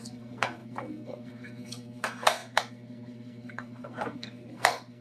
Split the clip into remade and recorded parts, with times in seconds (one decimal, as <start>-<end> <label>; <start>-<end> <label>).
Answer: 0.0-5.0 remade